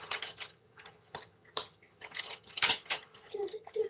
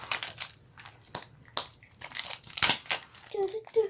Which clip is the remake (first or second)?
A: first